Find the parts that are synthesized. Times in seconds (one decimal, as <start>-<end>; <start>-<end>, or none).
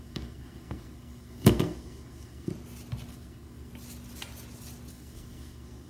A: 0.0-2.5; 3.1-3.7; 4.9-5.9